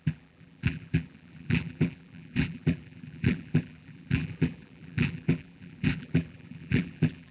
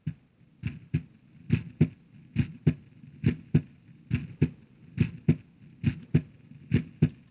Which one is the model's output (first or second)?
first